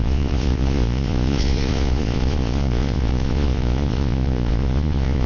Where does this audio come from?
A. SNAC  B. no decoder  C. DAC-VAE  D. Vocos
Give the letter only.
D